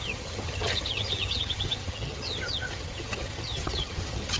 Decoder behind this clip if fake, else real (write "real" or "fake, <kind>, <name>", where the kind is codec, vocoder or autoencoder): fake, vocoder, HiFi-GAN